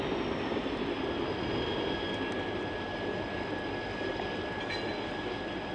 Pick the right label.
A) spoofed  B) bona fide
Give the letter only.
B